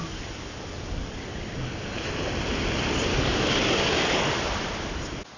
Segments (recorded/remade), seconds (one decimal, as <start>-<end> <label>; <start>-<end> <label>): 0.0-3.1 recorded; 3.1-4.3 remade; 4.3-5.4 recorded